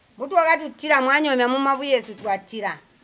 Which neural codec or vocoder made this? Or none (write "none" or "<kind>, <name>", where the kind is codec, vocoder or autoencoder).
none